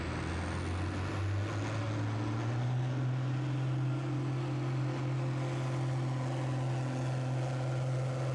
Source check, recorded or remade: recorded